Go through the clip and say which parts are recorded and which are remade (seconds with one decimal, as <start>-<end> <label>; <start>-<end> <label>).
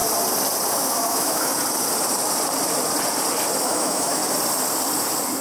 0.0-0.7 recorded; 0.7-1.5 remade; 1.5-3.6 recorded; 3.6-4.2 remade; 4.2-5.4 recorded